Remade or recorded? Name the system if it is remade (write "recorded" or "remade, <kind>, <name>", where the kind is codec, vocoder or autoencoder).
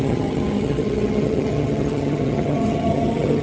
remade, vocoder, HiFi-GAN